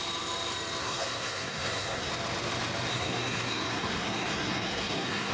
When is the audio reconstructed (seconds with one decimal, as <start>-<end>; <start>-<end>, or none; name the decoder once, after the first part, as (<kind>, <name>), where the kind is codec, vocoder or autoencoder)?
0.8-2.1 (codec, SNAC); 2.9-5.3